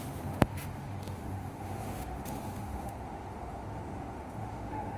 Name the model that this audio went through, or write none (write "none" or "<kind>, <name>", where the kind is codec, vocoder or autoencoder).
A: autoencoder, DAC-VAE